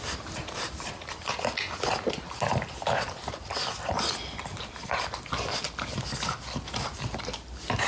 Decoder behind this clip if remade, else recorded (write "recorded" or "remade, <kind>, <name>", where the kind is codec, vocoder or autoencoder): recorded